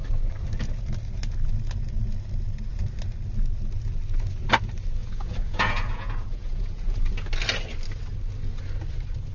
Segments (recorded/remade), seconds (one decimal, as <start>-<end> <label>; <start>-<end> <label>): 0.0-5.0 recorded; 5.0-7.0 remade; 7.0-9.3 recorded